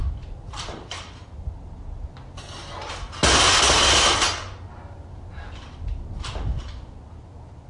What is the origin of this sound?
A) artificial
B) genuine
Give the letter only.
B